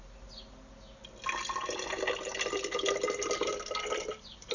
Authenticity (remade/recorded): recorded